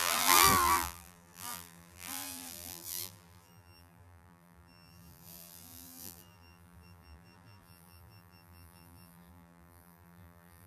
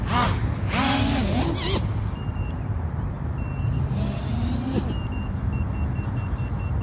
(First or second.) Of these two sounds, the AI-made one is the first